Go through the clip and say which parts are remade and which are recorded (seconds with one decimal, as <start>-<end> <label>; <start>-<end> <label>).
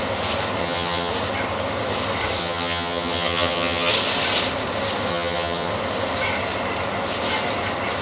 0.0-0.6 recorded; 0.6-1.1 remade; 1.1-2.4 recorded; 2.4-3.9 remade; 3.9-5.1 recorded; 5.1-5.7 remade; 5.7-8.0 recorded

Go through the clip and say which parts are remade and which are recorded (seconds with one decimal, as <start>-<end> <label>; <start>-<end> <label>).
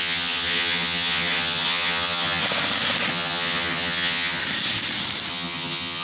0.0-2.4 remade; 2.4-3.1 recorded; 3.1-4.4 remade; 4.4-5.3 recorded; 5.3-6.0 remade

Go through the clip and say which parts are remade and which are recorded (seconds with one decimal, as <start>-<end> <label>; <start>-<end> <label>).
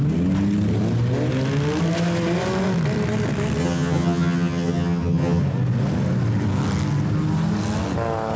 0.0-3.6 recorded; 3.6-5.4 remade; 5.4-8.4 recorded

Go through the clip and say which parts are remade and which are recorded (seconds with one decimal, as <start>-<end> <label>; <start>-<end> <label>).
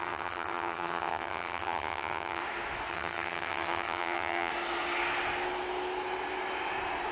0.0-2.4 remade; 2.4-2.9 recorded; 2.9-4.5 remade; 4.5-7.1 recorded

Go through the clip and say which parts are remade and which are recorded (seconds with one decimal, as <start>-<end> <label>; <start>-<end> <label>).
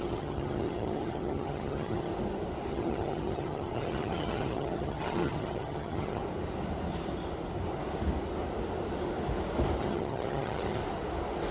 0.0-2.1 remade; 2.1-2.7 recorded; 2.7-6.2 remade; 6.2-9.8 recorded; 9.8-10.8 remade; 10.8-11.5 recorded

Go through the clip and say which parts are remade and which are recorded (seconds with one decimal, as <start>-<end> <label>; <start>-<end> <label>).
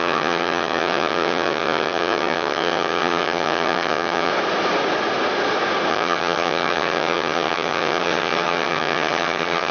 0.0-4.3 remade; 4.3-5.9 recorded; 5.9-9.7 remade